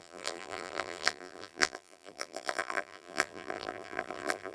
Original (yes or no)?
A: no